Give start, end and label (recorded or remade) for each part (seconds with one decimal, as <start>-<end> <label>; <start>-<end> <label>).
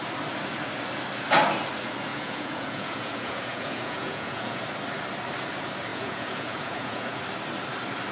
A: 0.0-2.1 recorded; 2.1-4.6 remade; 4.6-5.9 recorded; 5.9-7.2 remade; 7.2-8.1 recorded